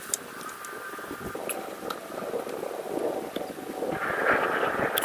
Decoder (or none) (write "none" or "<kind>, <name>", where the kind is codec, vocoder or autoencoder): none